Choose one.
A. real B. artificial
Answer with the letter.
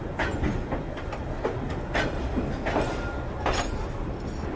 A